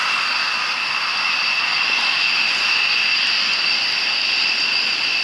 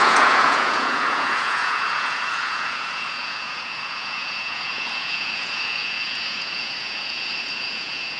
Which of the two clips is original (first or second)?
first